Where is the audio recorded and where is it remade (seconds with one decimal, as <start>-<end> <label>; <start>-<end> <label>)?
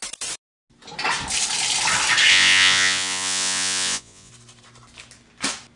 0.0-2.3 recorded; 2.3-4.3 remade; 4.3-5.8 recorded